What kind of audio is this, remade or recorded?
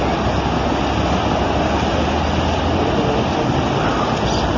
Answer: recorded